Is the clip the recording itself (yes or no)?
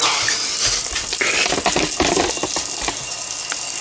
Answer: yes